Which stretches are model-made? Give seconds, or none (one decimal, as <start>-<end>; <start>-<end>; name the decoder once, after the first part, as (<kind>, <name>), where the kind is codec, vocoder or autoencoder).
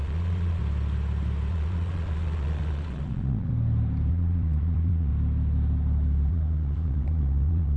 0.0-0.6 (vocoder, Vocos); 1.5-3.5; 4.1-5.1; 6.3-7.8